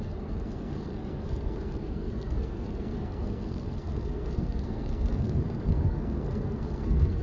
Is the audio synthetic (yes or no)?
yes